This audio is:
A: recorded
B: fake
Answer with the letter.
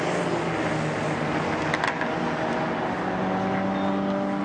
A